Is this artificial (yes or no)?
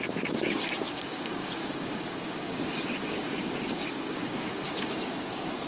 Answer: yes